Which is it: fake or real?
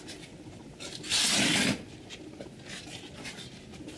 real